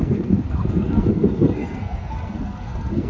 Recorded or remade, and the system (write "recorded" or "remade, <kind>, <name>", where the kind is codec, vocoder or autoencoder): remade, codec, SNAC